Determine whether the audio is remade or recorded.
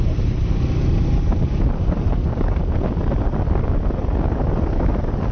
recorded